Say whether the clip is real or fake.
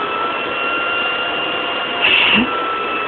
real